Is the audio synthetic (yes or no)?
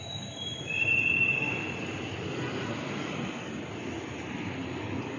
no